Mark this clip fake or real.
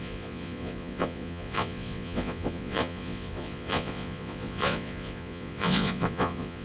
fake